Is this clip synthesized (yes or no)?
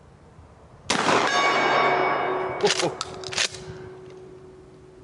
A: no